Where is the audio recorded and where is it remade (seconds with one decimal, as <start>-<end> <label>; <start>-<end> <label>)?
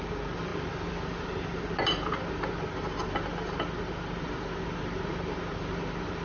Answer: 0.0-0.5 remade; 0.5-4.2 recorded; 4.2-6.2 remade